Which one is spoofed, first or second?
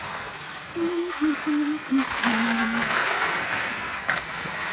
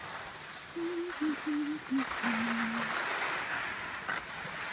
first